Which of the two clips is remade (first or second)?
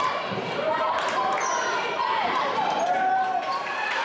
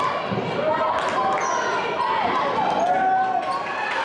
first